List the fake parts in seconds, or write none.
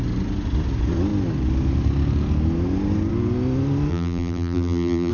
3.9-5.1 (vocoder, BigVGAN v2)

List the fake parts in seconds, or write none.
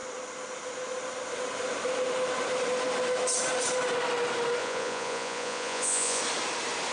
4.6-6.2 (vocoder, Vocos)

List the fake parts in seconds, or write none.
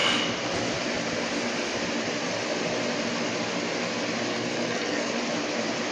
4.3-5.1 (codec, SNAC)